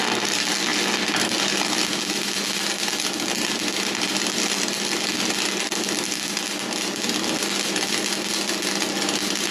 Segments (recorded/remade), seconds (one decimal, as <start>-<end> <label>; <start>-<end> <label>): 0.0-9.5 recorded